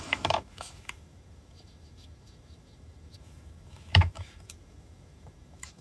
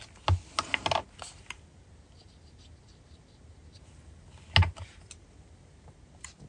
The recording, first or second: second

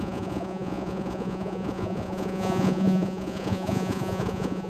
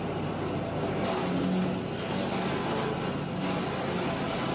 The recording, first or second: second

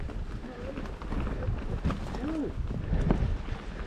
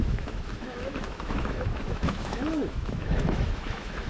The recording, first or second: first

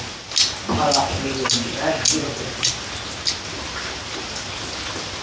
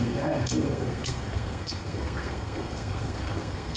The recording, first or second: first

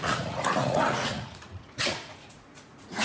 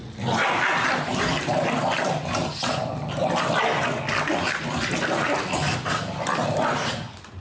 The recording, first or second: second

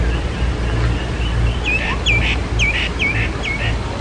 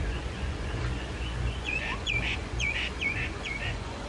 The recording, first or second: first